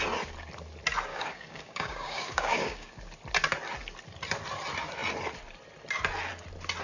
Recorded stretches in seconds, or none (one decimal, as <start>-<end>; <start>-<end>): 0.0-1.1; 3.0-6.8